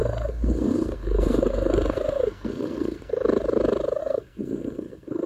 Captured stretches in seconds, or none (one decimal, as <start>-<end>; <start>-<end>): 3.1-4.0